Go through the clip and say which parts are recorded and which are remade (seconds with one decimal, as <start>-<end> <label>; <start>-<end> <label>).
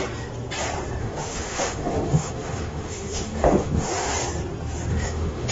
0.0-1.0 recorded; 1.0-4.1 remade; 4.1-4.9 recorded; 4.9-5.5 remade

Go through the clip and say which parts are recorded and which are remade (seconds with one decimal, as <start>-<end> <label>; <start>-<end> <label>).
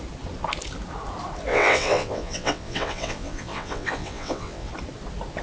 0.0-1.5 recorded; 1.5-4.7 remade; 4.7-5.4 recorded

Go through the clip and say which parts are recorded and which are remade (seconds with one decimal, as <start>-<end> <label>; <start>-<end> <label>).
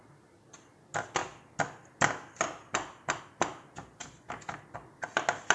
0.0-5.5 recorded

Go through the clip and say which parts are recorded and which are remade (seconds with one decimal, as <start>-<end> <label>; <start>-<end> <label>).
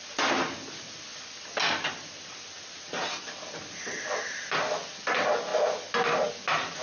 0.0-6.8 recorded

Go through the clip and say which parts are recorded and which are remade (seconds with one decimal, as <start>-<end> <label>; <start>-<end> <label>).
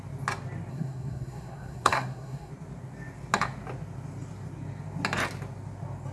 0.0-0.7 recorded; 0.7-2.5 remade; 2.5-6.1 recorded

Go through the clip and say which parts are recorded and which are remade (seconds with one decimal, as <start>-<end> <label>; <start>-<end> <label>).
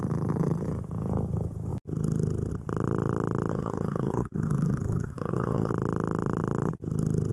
0.0-3.5 recorded; 3.5-5.7 remade; 5.7-7.3 recorded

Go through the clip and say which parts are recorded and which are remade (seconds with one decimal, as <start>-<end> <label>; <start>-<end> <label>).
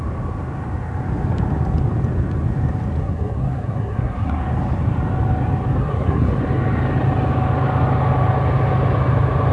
0.0-3.0 recorded; 3.0-4.4 remade; 4.4-5.8 recorded; 5.8-6.3 remade; 6.3-9.5 recorded